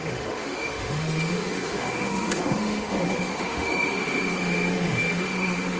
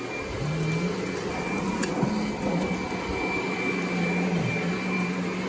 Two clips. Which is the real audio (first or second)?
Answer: second